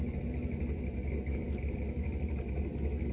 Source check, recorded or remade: recorded